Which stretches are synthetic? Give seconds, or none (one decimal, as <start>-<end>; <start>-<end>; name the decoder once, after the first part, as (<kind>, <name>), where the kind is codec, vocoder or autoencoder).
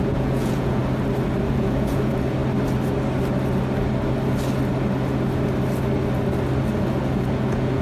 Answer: 0.0-0.8 (vocoder, Vocos); 1.5-2.4; 7.0-7.8